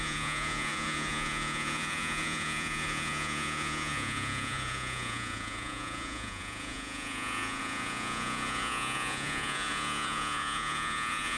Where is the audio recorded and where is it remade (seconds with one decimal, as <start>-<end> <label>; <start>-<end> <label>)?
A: 0.0-11.4 remade